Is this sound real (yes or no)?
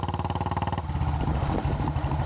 yes